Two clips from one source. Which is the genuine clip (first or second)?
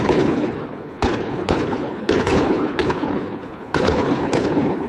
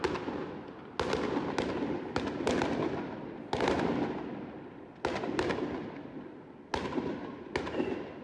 second